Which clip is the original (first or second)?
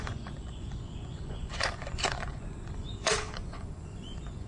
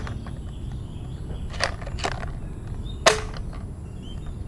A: second